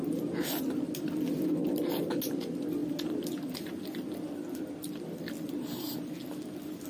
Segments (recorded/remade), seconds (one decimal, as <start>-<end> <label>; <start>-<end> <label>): 0.0-6.9 recorded